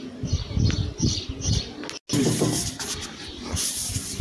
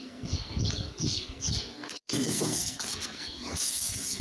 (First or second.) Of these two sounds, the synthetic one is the second